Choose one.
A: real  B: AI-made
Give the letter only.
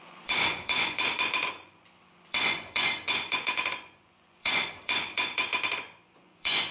B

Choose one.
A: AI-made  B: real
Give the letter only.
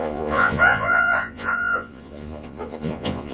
A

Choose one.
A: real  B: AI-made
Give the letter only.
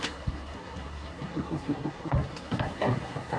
B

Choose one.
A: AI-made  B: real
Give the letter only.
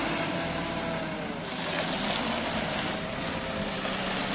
B